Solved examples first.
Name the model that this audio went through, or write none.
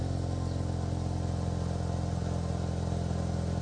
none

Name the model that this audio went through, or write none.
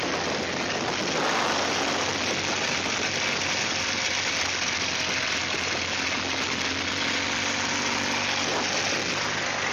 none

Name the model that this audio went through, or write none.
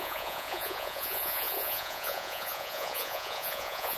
vocoder, Vocos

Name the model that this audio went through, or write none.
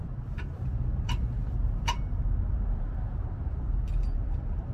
vocoder, BigVGAN v2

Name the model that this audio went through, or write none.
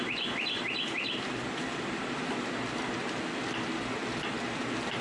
none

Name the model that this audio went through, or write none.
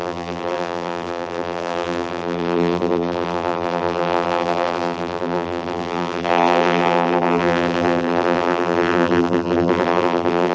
vocoder, BigVGAN v2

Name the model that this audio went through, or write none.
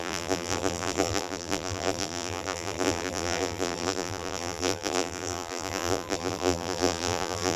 vocoder, BigVGAN v2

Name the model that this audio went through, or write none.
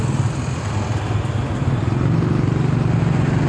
none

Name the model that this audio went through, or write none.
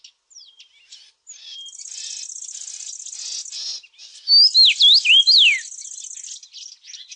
none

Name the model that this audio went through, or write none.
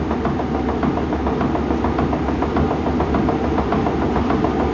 none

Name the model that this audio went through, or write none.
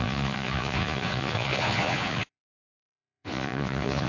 vocoder, Vocos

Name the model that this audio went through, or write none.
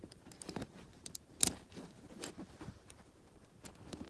vocoder, BigVGAN v2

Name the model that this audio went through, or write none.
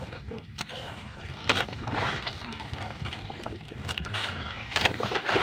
codec, DAC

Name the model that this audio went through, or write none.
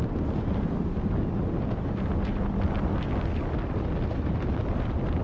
none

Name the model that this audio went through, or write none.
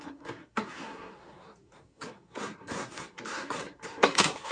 codec, SNAC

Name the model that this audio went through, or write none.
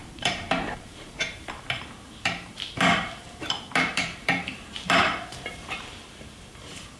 vocoder, BigVGAN v2